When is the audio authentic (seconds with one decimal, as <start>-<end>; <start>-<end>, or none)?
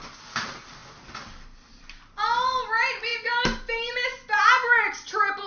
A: 0.0-5.5